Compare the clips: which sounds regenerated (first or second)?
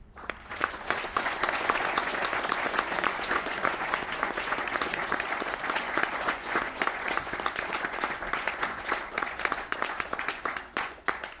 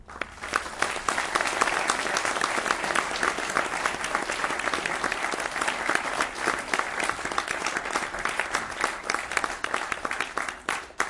first